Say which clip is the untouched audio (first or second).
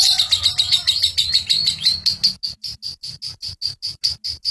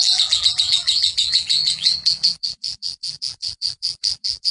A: first